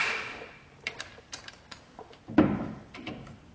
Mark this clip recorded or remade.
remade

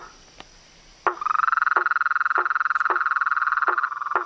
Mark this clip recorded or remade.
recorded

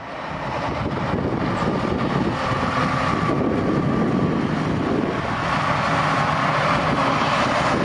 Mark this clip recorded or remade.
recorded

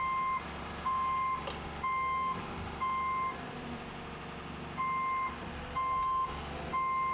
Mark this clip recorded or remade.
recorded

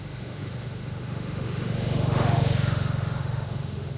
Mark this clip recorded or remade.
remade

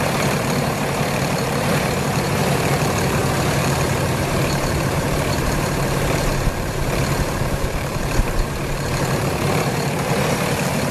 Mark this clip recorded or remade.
remade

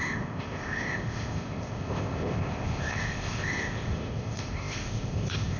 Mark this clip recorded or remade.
remade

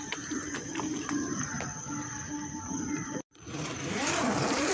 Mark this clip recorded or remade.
remade